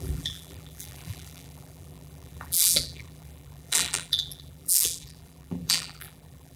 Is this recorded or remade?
remade